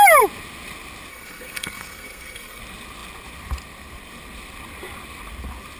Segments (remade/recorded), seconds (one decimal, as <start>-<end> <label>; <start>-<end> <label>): 0.0-1.1 recorded; 1.1-2.6 remade; 2.6-5.8 recorded